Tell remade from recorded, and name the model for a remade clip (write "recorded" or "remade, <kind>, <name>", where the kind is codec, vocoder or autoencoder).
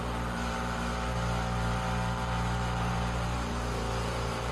remade, vocoder, BigVGAN v2